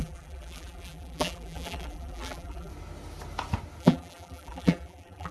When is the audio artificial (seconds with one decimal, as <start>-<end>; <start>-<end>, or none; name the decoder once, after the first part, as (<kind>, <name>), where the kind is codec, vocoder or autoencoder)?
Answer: 0.0-2.7 (vocoder, BigVGAN v2); 3.8-5.3